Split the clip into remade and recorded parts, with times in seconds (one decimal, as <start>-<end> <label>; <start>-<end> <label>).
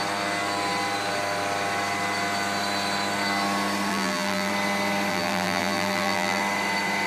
0.0-3.9 recorded; 3.9-4.5 remade; 4.5-5.1 recorded; 5.1-6.4 remade; 6.4-7.1 recorded